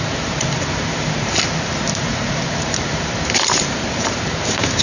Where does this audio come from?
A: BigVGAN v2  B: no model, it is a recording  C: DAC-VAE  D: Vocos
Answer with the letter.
A